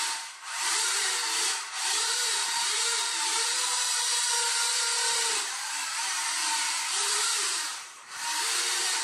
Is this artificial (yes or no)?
yes